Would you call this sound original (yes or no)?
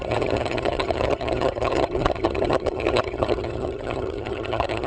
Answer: no